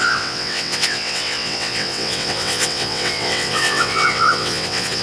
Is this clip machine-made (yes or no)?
yes